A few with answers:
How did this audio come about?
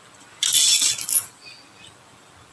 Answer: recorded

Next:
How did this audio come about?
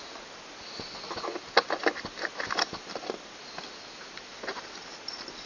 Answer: recorded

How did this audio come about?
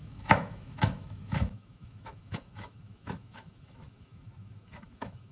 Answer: remade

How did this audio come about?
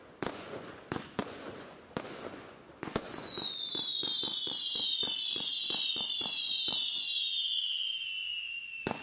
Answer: remade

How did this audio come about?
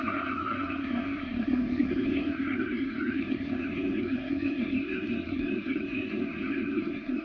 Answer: remade